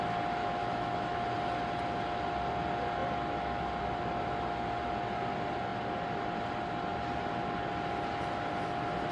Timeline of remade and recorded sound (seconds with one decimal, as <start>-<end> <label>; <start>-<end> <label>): 0.0-0.4 recorded; 0.4-1.2 remade; 1.2-9.1 recorded